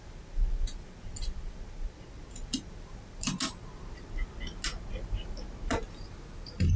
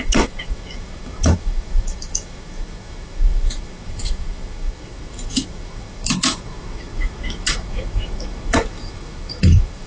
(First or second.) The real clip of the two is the first